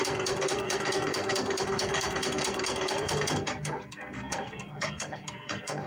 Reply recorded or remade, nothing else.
remade